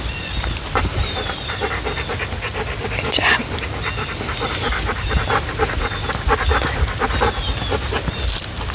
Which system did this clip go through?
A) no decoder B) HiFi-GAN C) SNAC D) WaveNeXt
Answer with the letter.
A